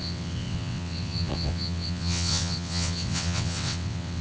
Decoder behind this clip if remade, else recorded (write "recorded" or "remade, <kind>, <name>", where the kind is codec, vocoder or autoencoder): remade, vocoder, WaveNeXt